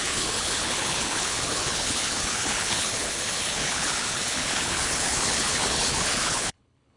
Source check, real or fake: fake